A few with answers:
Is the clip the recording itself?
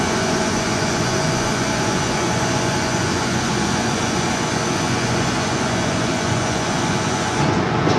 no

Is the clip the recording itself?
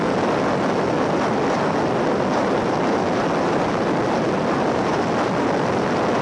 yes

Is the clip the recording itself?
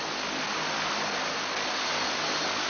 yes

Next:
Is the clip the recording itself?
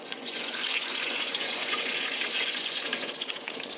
no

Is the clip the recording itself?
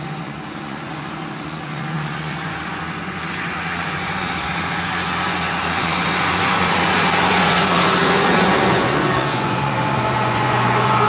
no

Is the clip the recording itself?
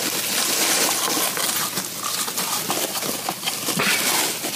yes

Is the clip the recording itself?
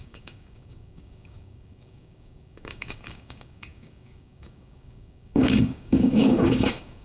no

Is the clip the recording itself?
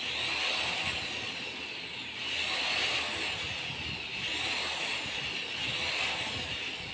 yes